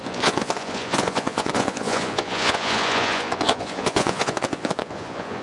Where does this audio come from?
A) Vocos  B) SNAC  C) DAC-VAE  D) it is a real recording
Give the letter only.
A